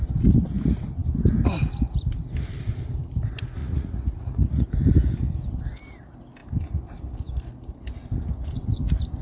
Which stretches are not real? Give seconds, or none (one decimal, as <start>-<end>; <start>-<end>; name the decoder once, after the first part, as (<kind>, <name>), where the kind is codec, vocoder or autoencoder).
3.6-4.7 (vocoder, Vocos)